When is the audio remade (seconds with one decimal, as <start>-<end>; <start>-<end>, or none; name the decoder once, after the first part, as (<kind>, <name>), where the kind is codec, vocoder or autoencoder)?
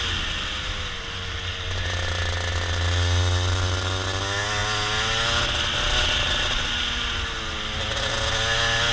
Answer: none